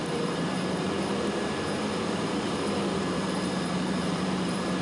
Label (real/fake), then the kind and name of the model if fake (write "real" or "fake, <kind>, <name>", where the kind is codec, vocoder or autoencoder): fake, vocoder, BigVGAN v2